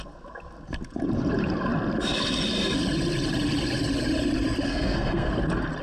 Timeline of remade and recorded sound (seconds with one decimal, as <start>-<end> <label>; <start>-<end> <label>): 0.0-4.7 recorded; 4.7-5.3 remade; 5.3-5.8 recorded